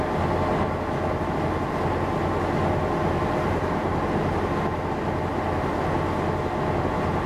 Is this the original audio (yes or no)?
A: yes